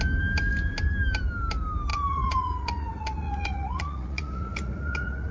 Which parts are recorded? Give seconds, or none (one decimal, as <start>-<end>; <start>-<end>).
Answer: 0.0-1.9